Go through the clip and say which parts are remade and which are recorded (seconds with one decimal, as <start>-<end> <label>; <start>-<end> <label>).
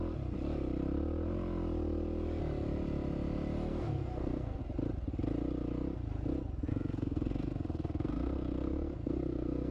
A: 0.0-3.7 recorded; 3.7-4.6 remade; 4.6-6.7 recorded; 6.7-9.7 remade